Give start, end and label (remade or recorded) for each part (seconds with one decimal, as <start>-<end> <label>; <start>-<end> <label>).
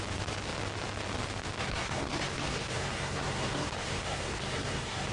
0.0-1.6 recorded; 1.6-5.1 remade